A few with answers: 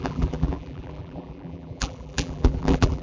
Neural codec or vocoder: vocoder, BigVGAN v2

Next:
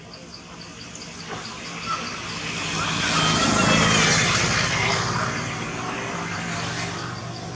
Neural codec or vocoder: none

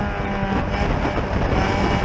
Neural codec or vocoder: none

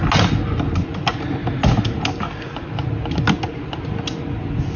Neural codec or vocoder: none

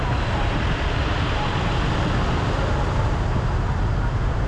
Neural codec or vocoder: none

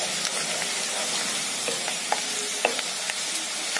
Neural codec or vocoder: none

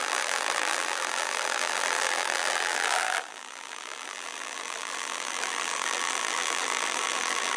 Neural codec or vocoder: vocoder, BigVGAN v2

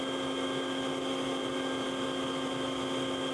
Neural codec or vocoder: none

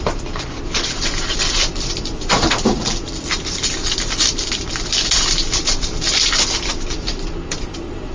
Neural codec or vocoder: vocoder, BigVGAN v2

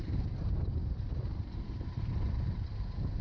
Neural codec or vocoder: vocoder, BigVGAN v2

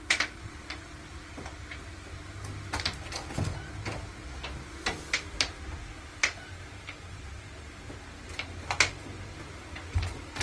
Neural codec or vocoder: none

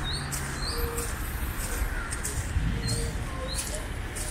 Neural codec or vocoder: none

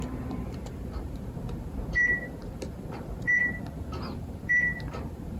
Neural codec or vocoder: vocoder, BigVGAN v2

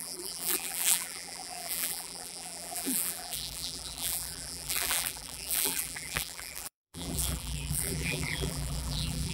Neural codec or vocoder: vocoder, BigVGAN v2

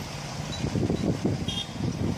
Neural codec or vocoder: none